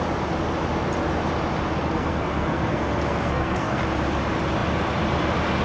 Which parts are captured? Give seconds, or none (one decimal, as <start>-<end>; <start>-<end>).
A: 0.0-1.8; 3.8-5.6